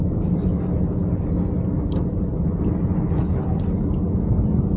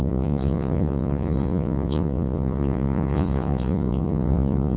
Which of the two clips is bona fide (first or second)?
first